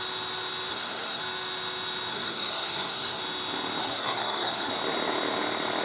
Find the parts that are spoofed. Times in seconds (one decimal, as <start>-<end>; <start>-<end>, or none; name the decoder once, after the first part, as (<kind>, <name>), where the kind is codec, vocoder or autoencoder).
0.7-1.2 (codec, SNAC); 2.1-3.2; 3.8-4.7